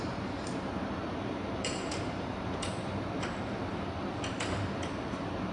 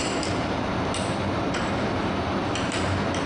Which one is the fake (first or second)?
first